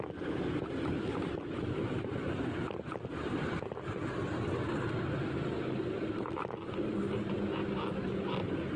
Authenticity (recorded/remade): recorded